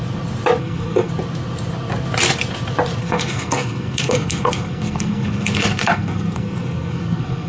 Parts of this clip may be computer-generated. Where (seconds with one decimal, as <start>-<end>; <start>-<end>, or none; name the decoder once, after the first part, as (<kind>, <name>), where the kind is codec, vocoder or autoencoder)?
0.6-1.1 (codec, SNAC); 3.0-7.5